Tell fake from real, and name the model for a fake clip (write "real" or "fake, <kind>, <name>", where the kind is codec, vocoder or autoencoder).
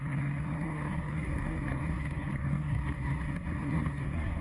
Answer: fake, codec, SNAC